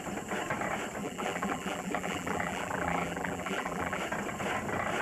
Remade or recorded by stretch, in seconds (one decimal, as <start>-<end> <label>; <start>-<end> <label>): 0.0-1.0 recorded; 1.0-4.0 remade; 4.0-5.0 recorded